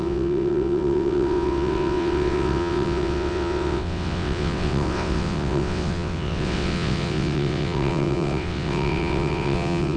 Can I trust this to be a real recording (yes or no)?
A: no